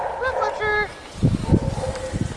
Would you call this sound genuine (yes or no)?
yes